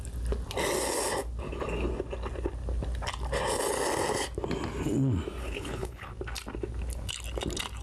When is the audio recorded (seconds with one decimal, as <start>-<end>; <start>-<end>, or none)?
0.0-5.4; 6.1-7.8